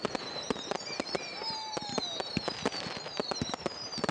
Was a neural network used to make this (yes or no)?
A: yes